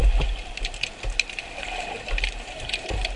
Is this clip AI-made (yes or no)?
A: yes